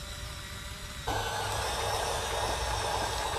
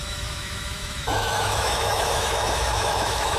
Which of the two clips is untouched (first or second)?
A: first